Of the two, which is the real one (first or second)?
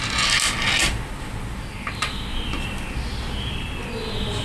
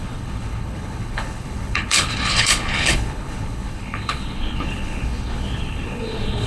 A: first